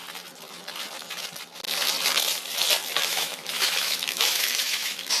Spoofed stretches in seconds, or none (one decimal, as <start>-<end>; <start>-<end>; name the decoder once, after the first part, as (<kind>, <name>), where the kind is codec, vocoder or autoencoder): 3.1-5.2 (autoencoder, DAC-VAE)